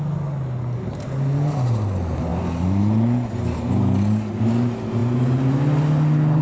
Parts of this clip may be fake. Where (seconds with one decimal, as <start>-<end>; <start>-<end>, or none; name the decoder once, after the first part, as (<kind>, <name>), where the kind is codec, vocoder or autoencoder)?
none

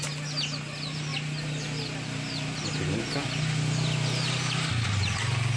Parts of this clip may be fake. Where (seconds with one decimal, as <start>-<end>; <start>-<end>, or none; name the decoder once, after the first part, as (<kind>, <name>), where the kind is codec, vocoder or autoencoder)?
1.1-3.1 (vocoder, BigVGAN v2)

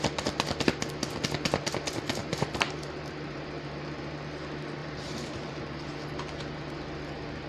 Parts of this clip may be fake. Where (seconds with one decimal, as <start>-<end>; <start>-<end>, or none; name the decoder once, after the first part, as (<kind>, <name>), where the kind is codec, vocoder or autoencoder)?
2.2-4.0 (vocoder, BigVGAN v2); 4.8-5.5

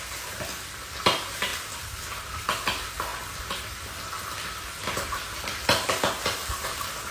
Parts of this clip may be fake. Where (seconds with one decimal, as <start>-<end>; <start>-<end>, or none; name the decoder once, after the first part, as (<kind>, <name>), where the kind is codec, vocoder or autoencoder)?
none

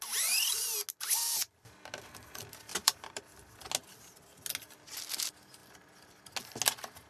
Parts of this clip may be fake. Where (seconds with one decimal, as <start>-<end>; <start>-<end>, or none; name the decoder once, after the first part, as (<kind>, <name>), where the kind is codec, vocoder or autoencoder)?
2.7-3.6 (vocoder, BigVGAN v2)

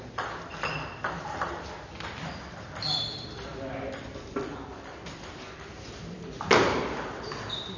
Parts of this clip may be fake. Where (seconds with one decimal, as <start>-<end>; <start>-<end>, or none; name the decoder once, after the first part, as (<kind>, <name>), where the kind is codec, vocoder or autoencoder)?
0.0-3.5 (vocoder, BigVGAN v2)